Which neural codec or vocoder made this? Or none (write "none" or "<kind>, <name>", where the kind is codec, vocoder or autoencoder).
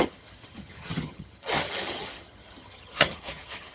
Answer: vocoder, HiFi-GAN